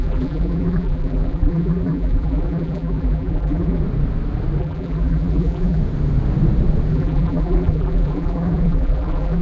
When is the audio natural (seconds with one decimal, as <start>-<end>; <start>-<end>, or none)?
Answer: 3.8-4.6; 5.8-6.9